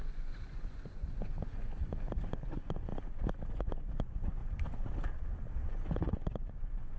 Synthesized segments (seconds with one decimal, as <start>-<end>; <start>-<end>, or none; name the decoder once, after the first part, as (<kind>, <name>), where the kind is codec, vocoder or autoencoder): 0.0-2.9 (vocoder, Vocos); 3.5-4.4; 5.7-7.0